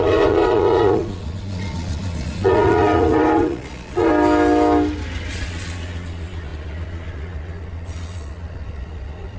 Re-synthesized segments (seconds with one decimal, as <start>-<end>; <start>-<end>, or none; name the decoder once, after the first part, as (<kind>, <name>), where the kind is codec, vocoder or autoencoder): 0.0-4.1 (vocoder, Vocos); 5.3-9.4